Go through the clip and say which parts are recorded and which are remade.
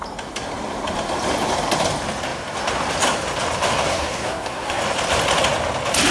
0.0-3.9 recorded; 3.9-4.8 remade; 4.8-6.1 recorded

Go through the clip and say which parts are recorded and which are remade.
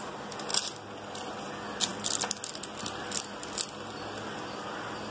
0.0-5.1 recorded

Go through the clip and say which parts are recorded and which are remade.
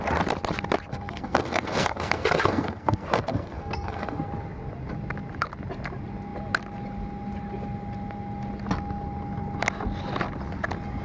0.0-0.9 recorded; 0.9-4.3 remade; 4.3-11.0 recorded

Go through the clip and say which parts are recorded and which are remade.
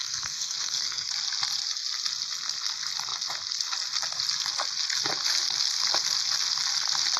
0.0-1.1 remade; 1.1-7.2 recorded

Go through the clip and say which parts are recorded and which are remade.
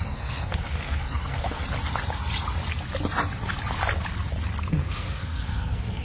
0.0-1.6 remade; 1.6-4.6 recorded; 4.6-6.0 remade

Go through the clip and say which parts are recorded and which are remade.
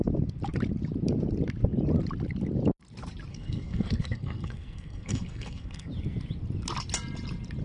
0.0-3.3 recorded; 3.3-5.9 remade; 5.9-7.6 recorded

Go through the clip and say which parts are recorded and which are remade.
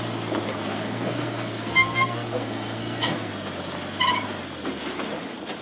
0.0-0.5 recorded; 0.5-3.3 remade; 3.3-5.6 recorded